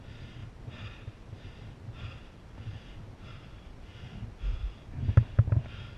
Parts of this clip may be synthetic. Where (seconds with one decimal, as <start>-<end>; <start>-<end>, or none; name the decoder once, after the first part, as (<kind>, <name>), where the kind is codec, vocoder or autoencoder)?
0.0-0.4 (vocoder, BigVGAN v2); 3.3-3.9; 4.6-6.0